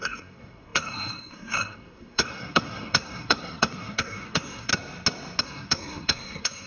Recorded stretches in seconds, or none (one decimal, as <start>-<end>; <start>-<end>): 4.7-5.4

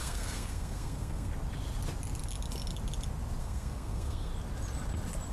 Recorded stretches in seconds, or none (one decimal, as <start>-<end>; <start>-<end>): 1.3-3.4; 4.3-5.3

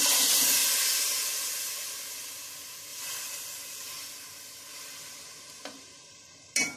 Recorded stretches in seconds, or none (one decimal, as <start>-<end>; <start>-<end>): 0.0-6.8

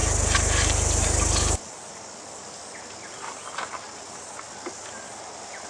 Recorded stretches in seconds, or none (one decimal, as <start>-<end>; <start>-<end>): 0.0-5.7